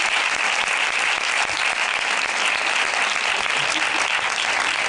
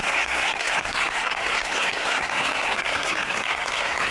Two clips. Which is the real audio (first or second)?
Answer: first